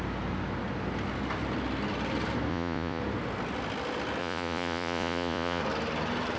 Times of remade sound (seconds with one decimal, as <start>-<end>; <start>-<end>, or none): 2.5-3.0; 4.2-5.6